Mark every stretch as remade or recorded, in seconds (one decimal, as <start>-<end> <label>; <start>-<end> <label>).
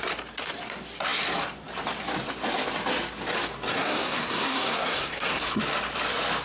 0.0-3.7 recorded; 3.7-5.6 remade; 5.6-6.4 recorded